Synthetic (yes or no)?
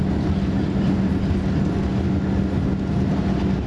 no